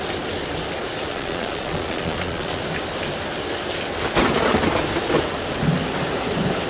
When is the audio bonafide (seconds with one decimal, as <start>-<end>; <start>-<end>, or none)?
0.0-1.1; 2.6-6.7